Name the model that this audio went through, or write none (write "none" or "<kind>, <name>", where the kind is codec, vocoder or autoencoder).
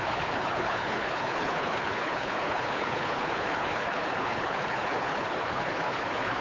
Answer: codec, HILCodec